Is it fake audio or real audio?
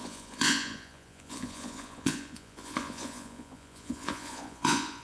fake